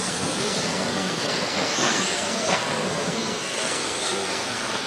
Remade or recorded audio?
remade